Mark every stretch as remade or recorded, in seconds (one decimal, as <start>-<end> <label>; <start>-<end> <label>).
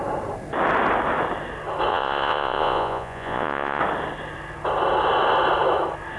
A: 0.0-1.9 recorded; 1.9-3.8 remade; 3.8-6.2 recorded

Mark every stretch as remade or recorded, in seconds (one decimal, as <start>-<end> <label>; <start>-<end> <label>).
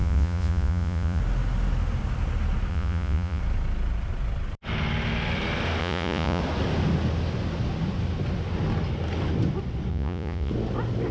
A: 0.0-1.2 remade; 1.2-2.7 recorded; 2.7-3.4 remade; 3.4-5.8 recorded; 5.8-6.4 remade; 6.4-9.9 recorded; 9.9-10.5 remade; 10.5-11.1 recorded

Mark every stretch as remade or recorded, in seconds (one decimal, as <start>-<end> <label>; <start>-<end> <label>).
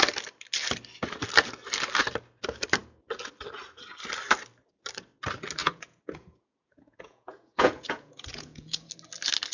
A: 0.0-5.6 recorded; 5.6-8.9 remade; 8.9-9.5 recorded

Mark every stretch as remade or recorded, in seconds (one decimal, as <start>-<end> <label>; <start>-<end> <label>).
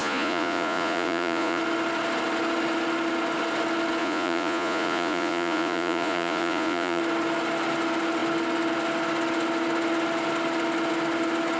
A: 0.0-1.6 remade; 1.6-4.0 recorded; 4.0-7.0 remade; 7.0-11.6 recorded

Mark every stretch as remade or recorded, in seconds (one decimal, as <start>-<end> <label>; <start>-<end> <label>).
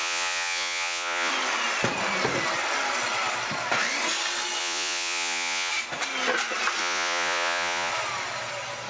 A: 0.0-1.3 remade; 1.3-4.6 recorded; 4.6-5.7 remade; 5.7-6.8 recorded; 6.8-7.9 remade; 7.9-8.9 recorded